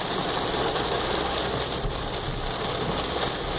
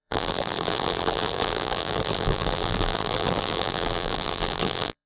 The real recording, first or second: first